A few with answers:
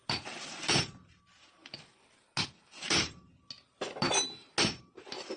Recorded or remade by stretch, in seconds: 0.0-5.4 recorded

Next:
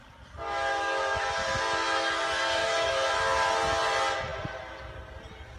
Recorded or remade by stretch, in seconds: 0.0-0.7 recorded; 0.7-1.3 remade; 1.3-2.6 recorded; 2.6-3.1 remade; 3.1-5.6 recorded